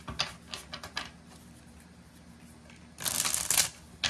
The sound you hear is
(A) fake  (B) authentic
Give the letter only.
B